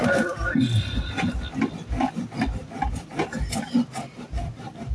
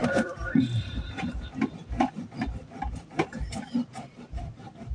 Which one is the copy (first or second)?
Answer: second